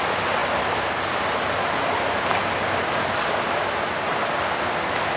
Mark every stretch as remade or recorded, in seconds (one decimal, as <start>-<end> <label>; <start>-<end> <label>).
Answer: 0.0-5.2 recorded